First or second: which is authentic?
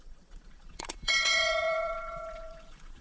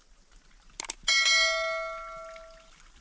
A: second